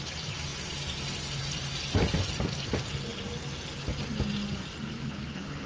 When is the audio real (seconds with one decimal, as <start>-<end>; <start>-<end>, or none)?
0.0-4.9